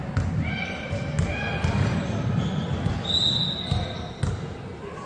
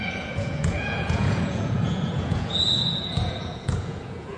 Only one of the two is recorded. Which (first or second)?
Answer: first